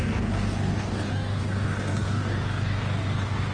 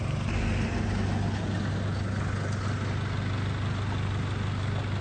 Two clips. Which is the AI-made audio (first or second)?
first